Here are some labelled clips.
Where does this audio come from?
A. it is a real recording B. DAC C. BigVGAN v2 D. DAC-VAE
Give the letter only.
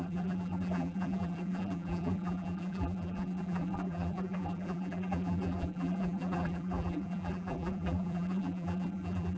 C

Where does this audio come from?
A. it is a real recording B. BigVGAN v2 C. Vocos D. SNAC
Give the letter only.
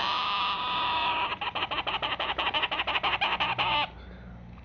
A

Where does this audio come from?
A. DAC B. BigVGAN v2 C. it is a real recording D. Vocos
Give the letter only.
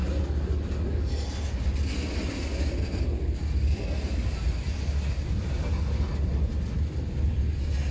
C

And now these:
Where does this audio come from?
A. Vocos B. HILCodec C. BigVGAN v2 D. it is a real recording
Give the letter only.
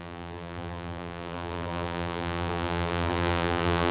C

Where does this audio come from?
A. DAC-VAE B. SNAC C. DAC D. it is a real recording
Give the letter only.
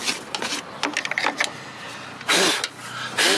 D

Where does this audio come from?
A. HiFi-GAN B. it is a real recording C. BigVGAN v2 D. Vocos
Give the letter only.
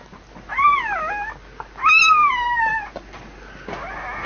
B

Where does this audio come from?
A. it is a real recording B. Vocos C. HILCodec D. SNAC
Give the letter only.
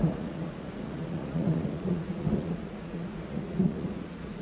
B